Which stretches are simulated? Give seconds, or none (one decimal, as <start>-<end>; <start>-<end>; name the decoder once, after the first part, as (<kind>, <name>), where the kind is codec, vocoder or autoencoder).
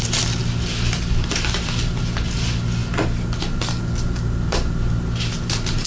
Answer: none